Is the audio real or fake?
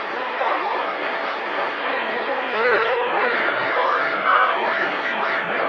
fake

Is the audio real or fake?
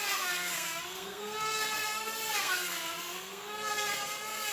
fake